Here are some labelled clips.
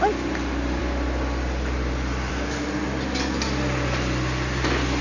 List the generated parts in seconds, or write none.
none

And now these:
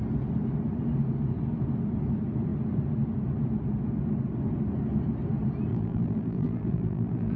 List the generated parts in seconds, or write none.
5.7-7.4 (vocoder, BigVGAN v2)

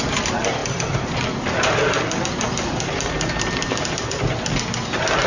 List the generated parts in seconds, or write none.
none

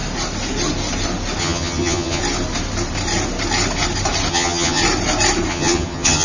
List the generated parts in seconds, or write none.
1.4-2.2 (vocoder, HiFi-GAN); 4.3-4.8; 5.5-6.2

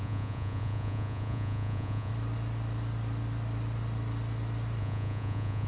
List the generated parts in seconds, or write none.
0.0-2.1 (vocoder, Vocos); 4.8-5.7

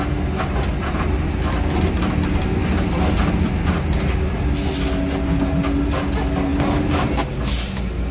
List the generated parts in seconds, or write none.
2.6-4.5 (vocoder, BigVGAN v2)